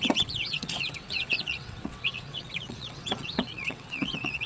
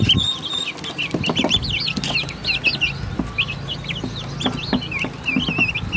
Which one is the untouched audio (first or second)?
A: second